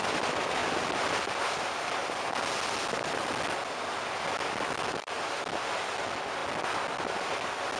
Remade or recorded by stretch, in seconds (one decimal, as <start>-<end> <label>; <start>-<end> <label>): 0.0-7.8 recorded